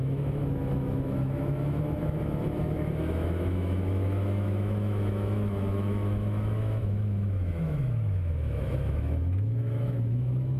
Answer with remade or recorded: remade